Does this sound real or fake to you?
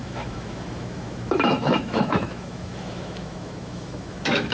fake